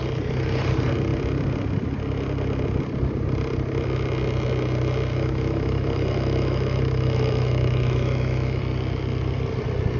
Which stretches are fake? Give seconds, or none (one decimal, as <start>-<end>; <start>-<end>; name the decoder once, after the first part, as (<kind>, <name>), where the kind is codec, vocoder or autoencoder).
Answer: 5.1-8.6 (autoencoder, DAC-VAE)